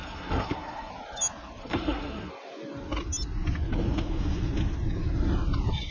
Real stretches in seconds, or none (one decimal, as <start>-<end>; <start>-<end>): 0.9-1.6; 2.3-5.9